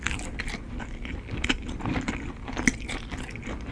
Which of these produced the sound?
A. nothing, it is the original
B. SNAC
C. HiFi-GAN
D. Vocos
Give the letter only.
A